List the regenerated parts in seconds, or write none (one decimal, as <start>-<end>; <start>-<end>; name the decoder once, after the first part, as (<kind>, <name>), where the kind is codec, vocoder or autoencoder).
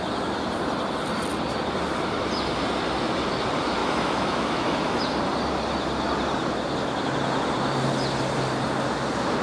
3.8-5.0 (autoencoder, DAC-VAE)